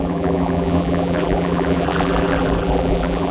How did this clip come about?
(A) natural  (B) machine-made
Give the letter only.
B